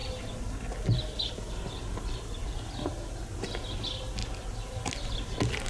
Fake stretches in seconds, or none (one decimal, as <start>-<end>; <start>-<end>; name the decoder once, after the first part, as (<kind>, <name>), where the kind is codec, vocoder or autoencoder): none